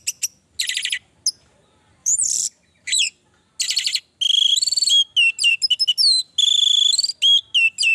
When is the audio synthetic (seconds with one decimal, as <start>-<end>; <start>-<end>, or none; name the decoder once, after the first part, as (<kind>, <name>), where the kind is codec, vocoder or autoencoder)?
2.0-3.3 (vocoder, BigVGAN v2)

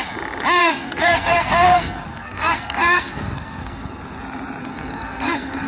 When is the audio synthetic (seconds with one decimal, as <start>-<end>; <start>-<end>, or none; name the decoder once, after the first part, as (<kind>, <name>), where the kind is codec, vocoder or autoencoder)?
0.6-4.0 (codec, SNAC); 4.6-5.7

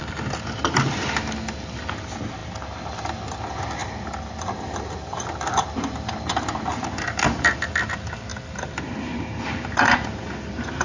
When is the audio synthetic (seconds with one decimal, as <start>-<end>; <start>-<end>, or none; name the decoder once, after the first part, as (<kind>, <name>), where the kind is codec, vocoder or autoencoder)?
6.7-7.7 (vocoder, BigVGAN v2)

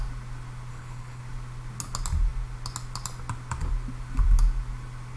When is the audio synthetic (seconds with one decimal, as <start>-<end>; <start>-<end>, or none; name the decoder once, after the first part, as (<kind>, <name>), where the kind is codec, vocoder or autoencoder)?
0.7-1.2 (codec, HILCodec)

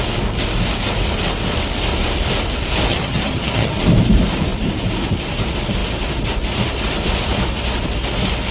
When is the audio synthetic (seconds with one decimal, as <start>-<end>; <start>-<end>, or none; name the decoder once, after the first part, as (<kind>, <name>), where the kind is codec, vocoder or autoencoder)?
2.9-3.8 (vocoder, HiFi-GAN)

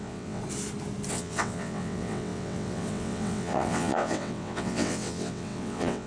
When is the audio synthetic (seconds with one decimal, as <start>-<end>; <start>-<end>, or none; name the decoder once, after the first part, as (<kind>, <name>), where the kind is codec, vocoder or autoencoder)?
0.0-0.4 (vocoder, WaveNeXt); 1.1-6.1

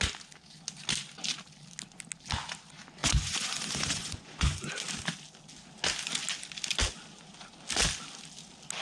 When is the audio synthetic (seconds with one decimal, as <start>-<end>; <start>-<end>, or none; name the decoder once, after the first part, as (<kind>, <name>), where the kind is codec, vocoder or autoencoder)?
3.0-4.8 (vocoder, Vocos)